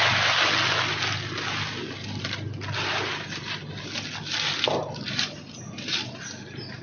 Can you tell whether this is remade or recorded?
recorded